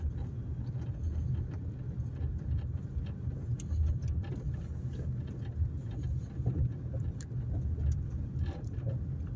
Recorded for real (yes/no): yes